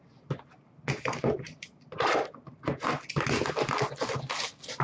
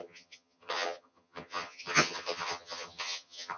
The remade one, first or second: second